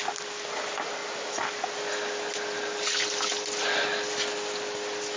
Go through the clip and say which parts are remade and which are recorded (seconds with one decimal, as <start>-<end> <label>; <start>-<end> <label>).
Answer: 0.0-5.2 recorded